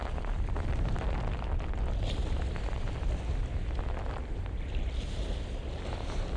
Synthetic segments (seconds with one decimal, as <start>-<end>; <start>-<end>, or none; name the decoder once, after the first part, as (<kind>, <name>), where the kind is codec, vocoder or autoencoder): 0.0-3.8 (vocoder, BigVGAN v2)